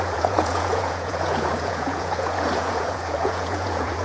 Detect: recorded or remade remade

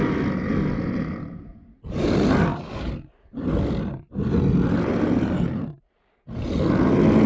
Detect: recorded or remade recorded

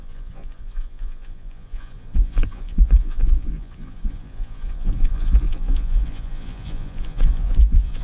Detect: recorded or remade remade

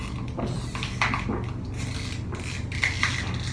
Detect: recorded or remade recorded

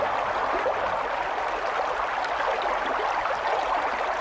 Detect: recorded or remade recorded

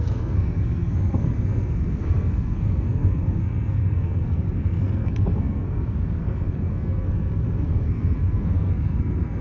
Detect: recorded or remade remade